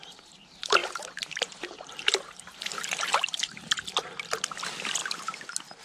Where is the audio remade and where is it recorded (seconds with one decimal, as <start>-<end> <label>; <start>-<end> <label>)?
0.0-5.0 remade; 5.0-5.8 recorded